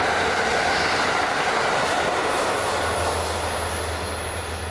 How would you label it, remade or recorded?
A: recorded